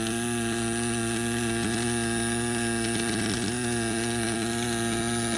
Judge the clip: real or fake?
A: real